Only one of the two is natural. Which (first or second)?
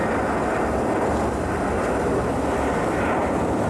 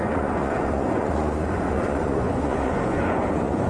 first